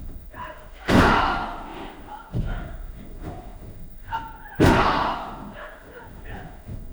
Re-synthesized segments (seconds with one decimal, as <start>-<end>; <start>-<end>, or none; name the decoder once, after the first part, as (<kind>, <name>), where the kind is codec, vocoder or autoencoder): 0.0-6.9 (autoencoder, DAC-VAE)

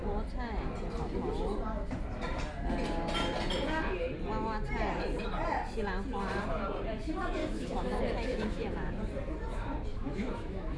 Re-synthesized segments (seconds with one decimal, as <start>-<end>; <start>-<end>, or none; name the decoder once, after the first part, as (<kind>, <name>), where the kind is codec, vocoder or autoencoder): 7.4-8.9 (autoencoder, DAC-VAE); 9.9-10.8

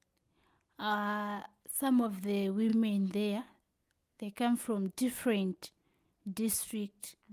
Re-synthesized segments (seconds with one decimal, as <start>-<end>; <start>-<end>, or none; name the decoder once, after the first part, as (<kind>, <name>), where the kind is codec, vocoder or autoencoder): 2.7-4.9 (autoencoder, DAC-VAE)

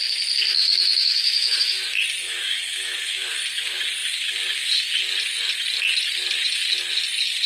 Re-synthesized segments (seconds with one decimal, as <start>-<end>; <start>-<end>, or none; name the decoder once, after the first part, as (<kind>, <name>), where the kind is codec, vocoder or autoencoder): 0.5-1.7 (autoencoder, DAC-VAE); 2.2-3.4

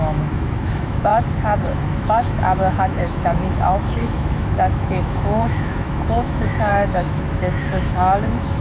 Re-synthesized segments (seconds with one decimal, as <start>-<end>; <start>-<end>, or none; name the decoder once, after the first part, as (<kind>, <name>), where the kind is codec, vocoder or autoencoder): 0.0-1.1 (autoencoder, DAC-VAE); 1.7-8.6